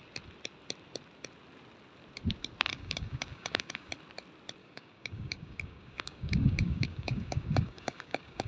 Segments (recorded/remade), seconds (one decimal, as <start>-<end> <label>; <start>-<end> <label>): 0.0-2.7 recorded; 2.7-3.9 remade; 3.9-4.6 recorded; 4.6-8.5 remade